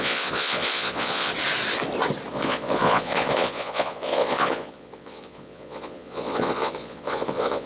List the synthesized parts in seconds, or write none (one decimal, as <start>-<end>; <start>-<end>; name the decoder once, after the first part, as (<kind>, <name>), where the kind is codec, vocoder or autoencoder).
0.0-1.3 (vocoder, Vocos); 2.3-7.7